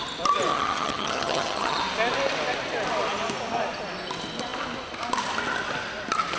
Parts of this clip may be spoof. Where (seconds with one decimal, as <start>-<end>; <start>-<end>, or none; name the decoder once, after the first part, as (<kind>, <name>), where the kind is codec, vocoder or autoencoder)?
0.5-1.8 (vocoder, HiFi-GAN)